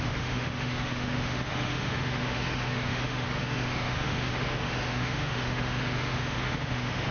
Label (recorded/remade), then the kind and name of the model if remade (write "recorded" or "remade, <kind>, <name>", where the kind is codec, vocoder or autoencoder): remade, autoencoder, DAC-VAE